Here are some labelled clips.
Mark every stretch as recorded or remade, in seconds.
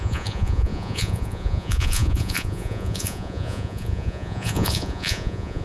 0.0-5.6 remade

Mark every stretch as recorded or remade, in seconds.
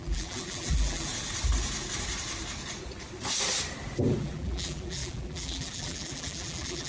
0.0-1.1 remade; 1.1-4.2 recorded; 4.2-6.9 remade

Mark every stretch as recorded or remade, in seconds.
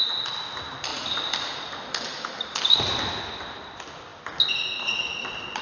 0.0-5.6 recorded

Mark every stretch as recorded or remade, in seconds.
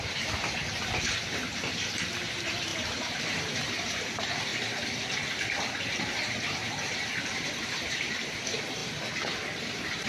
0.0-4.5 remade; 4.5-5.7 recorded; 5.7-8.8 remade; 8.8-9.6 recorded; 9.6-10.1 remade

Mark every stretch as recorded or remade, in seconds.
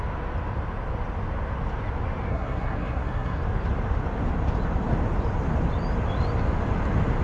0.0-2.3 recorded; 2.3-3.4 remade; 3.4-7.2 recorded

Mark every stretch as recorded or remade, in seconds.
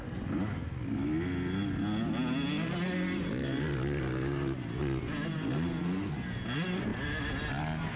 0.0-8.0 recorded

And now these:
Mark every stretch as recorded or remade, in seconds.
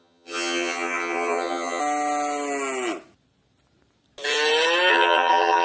0.0-1.8 remade; 1.8-4.9 recorded; 4.9-5.6 remade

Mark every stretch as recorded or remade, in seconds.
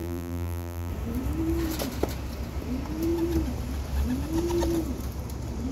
0.0-0.9 remade; 0.9-5.7 recorded